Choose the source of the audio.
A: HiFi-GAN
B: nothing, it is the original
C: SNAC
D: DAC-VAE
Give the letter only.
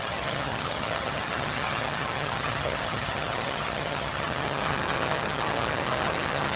A